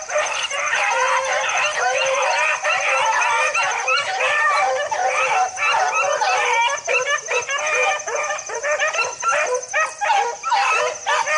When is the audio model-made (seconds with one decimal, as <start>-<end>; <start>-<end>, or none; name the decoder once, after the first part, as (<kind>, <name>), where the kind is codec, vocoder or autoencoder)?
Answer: 0.0-5.0 (vocoder, BigVGAN v2); 8.3-9.3